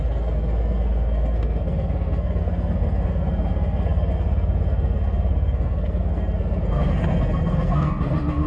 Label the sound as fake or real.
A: fake